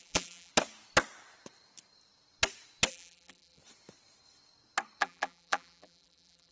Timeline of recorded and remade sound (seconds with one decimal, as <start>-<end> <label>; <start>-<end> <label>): 0.0-0.5 remade; 0.5-2.9 recorded; 2.9-3.6 remade; 3.6-5.0 recorded; 5.0-6.5 remade